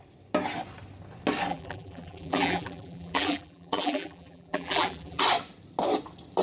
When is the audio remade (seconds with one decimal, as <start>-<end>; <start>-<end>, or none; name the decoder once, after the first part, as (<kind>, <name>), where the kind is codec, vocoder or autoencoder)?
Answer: 1.5-5.2 (vocoder, BigVGAN v2)